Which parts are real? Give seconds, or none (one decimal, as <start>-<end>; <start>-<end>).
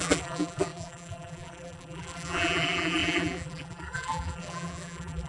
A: none